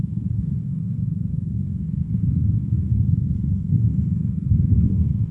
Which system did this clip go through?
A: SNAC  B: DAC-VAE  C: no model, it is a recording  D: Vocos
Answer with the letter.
A